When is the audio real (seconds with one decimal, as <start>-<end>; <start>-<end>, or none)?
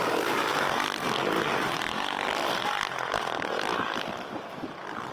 0.0-5.1